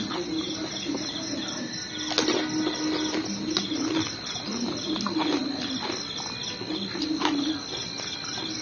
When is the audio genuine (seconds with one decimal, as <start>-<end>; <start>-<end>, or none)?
0.0-8.6